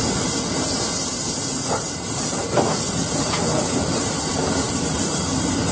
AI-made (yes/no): no